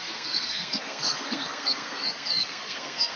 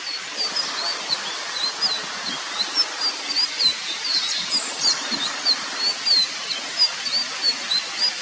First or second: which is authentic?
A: second